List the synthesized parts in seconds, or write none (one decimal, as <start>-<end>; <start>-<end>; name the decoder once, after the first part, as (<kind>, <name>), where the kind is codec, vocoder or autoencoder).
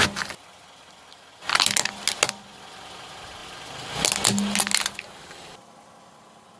none